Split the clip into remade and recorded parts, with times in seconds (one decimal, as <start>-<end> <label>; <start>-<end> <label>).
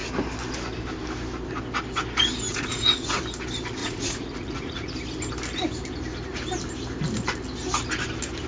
0.0-2.5 recorded; 2.5-3.2 remade; 3.2-3.8 recorded; 3.8-4.9 remade; 4.9-8.5 recorded